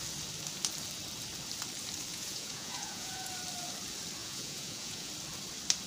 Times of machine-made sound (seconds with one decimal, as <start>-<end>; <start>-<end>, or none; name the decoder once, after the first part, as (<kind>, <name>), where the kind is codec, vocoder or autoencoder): 2.1-3.3 (vocoder, Vocos); 4.2-5.1